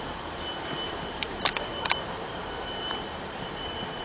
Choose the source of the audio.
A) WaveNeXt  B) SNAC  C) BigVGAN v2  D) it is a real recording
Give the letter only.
C